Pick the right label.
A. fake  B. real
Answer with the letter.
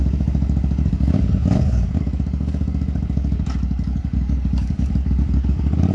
A